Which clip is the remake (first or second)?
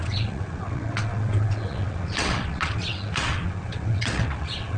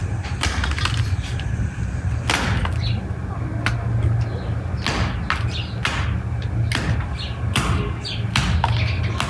first